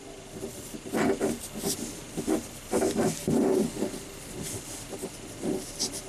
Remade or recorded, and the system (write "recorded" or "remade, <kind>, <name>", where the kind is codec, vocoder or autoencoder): recorded